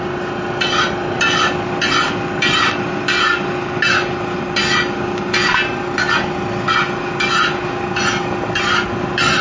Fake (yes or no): no